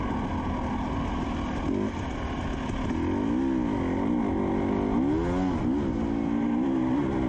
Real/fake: real